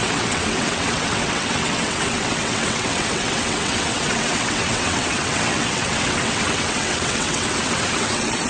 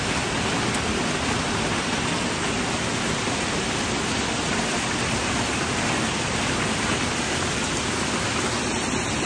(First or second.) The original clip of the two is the second